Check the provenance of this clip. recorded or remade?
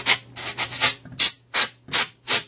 recorded